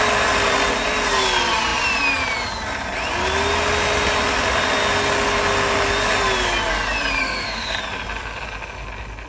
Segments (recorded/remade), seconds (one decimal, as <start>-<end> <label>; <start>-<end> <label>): 0.0-7.2 recorded; 7.2-7.8 remade; 7.8-9.3 recorded